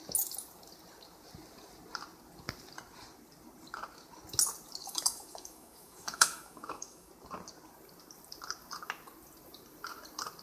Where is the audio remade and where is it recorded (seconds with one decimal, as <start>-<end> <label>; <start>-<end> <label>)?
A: 0.0-4.8 recorded; 4.8-7.1 remade; 7.1-10.4 recorded